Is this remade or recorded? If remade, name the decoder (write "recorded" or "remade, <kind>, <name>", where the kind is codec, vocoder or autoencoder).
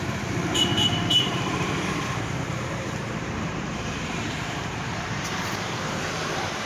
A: remade, vocoder, BigVGAN v2